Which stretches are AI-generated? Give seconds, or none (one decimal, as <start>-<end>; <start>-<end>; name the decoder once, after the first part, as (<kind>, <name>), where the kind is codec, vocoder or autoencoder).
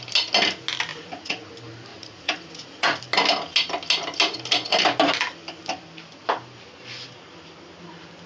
0.9-1.5 (vocoder, Vocos); 1.9-3.0